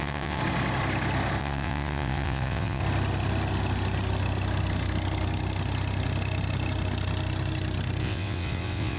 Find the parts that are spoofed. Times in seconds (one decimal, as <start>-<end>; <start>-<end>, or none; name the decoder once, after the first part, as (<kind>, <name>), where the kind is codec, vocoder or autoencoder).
0.0-0.4 (vocoder, WaveNeXt); 1.4-2.8; 8.0-9.0